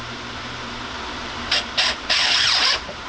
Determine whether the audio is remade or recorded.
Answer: remade